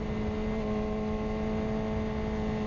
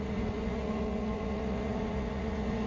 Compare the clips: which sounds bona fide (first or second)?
first